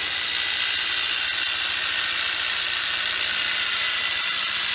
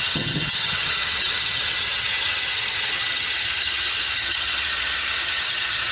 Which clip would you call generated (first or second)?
second